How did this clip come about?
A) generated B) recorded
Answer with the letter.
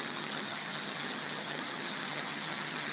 A